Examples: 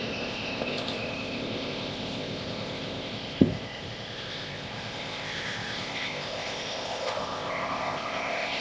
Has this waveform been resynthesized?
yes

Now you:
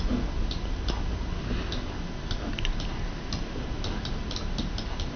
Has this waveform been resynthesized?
no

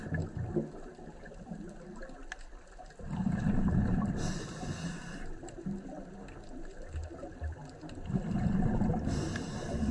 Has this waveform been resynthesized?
no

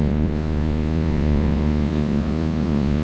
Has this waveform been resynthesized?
yes